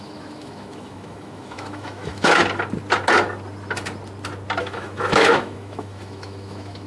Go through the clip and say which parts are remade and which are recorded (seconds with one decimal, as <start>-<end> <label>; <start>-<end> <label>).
0.0-2.4 remade; 2.4-4.6 recorded; 4.6-6.9 remade